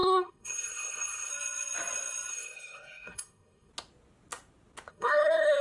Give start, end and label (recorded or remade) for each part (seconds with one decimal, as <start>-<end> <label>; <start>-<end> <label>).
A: 0.0-1.3 remade; 1.3-2.3 recorded; 2.3-3.7 remade; 3.7-4.9 recorded; 4.9-5.6 remade